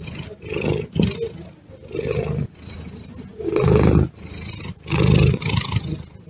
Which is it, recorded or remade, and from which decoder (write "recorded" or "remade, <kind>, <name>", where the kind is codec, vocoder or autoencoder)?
recorded